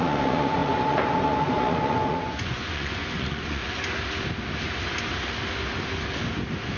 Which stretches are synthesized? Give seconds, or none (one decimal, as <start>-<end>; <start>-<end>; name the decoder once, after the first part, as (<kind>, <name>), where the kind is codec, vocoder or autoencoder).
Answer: 0.0-3.6 (vocoder, Vocos)